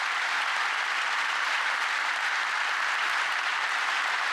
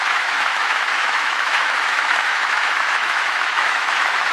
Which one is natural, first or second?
first